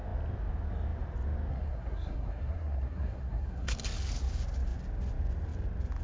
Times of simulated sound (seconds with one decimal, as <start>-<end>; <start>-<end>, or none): 1.5-3.7